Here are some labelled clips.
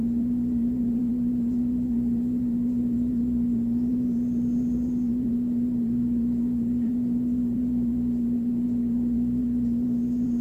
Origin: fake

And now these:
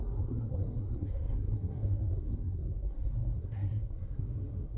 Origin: fake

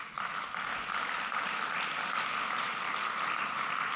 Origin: real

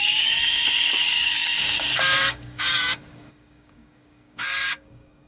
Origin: fake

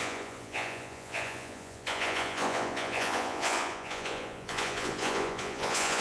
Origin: fake